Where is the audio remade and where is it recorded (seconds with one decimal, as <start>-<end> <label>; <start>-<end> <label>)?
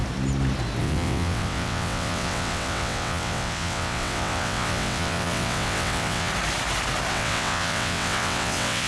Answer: 0.0-0.8 recorded; 0.8-6.3 remade; 6.3-7.1 recorded; 7.1-8.9 remade